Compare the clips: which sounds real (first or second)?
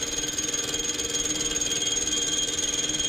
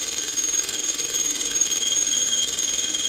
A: first